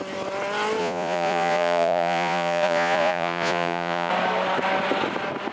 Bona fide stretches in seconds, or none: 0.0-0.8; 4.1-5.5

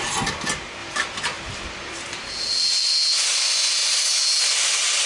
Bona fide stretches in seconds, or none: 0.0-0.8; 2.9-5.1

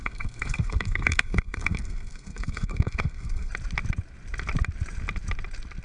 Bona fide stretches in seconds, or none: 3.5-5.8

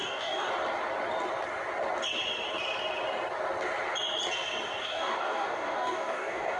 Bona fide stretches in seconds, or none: 0.5-4.8

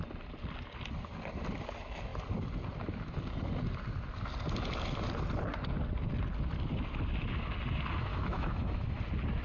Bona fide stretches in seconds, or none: 0.0-8.1; 9.0-9.4

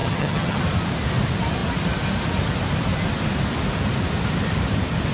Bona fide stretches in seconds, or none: 0.6-5.1